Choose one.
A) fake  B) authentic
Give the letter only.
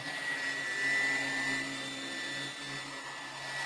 B